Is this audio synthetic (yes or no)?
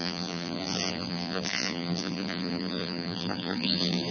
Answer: yes